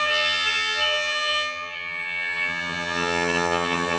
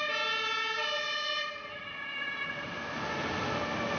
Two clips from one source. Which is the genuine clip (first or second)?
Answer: second